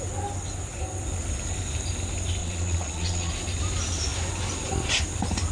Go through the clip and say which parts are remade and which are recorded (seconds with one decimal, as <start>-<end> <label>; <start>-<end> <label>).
0.0-2.4 recorded; 2.4-3.3 remade; 3.3-5.5 recorded